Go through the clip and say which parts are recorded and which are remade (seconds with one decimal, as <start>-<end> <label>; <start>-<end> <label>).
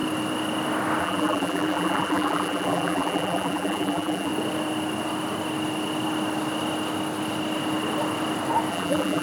0.0-1.0 recorded; 1.0-4.3 remade; 4.3-8.7 recorded; 8.7-9.2 remade